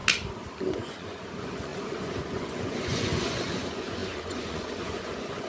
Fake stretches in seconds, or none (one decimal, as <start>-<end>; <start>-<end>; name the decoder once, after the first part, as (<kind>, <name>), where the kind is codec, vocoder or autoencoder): 0.7-5.5 (vocoder, Vocos)